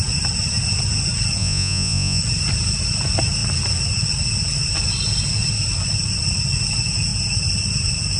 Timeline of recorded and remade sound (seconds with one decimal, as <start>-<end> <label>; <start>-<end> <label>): 0.0-1.4 recorded; 1.4-2.2 remade; 2.2-8.2 recorded